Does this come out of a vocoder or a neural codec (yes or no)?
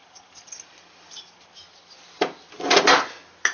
no